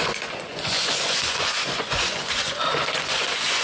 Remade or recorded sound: remade